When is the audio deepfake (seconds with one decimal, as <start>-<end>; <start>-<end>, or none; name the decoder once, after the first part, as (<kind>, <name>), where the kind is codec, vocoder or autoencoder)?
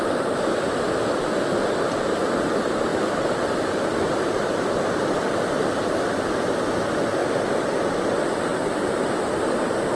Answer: 2.9-5.8 (vocoder, BigVGAN v2); 7.2-8.0; 8.5-9.2